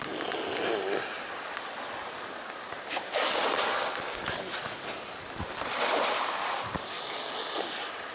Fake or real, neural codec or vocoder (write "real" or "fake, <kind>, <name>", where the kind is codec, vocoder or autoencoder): real